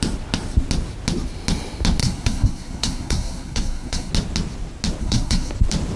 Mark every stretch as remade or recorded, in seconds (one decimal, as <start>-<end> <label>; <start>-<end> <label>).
0.0-2.0 recorded; 2.0-4.1 remade; 4.1-5.0 recorded; 5.0-5.5 remade; 5.5-6.0 recorded

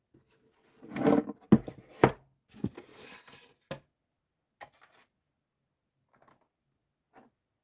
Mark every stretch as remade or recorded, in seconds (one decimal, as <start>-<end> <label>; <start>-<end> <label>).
0.0-7.6 recorded

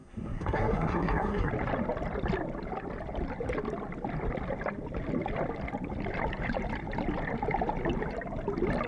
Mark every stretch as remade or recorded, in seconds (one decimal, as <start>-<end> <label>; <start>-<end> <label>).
0.0-1.5 remade; 1.5-8.9 recorded